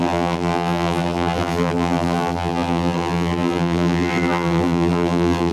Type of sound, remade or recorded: remade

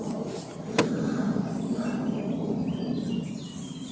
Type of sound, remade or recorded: recorded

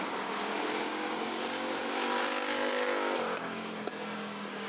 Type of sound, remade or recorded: remade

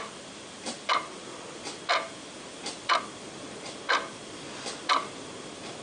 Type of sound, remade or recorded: recorded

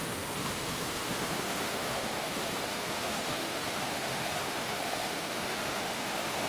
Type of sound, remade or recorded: remade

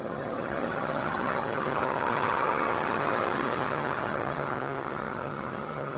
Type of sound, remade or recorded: remade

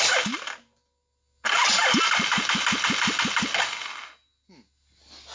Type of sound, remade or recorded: recorded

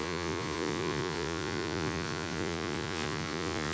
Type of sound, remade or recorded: remade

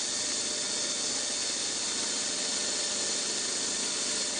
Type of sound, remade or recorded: recorded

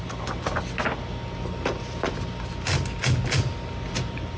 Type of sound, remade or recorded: recorded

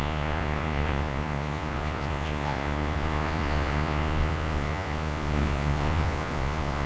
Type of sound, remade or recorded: remade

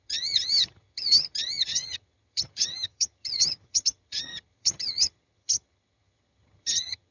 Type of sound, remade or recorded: remade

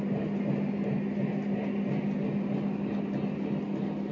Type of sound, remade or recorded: recorded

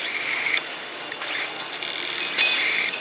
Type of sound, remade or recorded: recorded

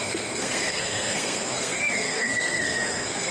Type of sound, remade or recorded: remade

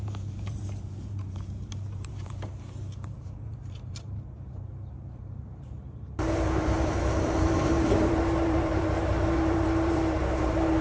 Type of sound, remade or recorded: remade